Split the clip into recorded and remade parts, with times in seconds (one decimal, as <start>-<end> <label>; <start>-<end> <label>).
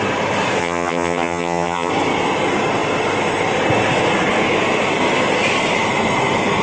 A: 0.0-0.6 recorded; 0.6-1.9 remade; 1.9-6.6 recorded